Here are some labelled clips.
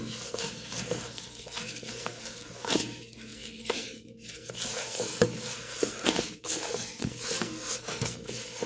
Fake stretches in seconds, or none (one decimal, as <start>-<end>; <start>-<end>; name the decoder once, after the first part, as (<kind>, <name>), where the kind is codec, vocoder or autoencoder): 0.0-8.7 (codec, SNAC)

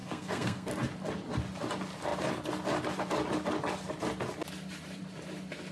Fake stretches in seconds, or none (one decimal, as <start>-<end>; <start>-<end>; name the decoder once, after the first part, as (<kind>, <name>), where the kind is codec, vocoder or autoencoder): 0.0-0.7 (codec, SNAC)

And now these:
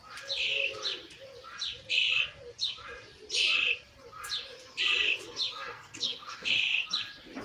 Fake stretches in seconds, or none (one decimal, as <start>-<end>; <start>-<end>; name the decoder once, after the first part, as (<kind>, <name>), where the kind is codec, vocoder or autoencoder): 5.5-6.5 (codec, SNAC)

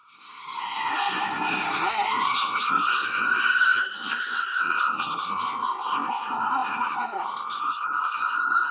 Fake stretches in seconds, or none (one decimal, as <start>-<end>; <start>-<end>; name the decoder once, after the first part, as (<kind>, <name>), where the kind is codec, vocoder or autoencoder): 0.0-8.7 (codec, SNAC)

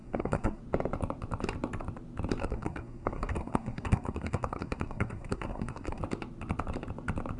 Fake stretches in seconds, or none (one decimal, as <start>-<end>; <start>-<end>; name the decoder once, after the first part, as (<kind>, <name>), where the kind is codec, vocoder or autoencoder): 0.0-0.6 (codec, SNAC); 2.4-6.0